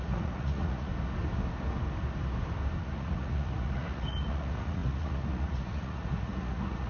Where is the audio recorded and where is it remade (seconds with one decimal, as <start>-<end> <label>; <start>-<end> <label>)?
0.0-0.9 remade; 0.9-2.8 recorded; 2.8-6.9 remade